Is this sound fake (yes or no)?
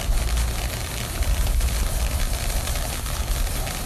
yes